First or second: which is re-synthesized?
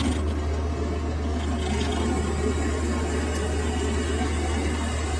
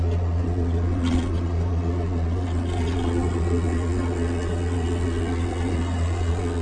second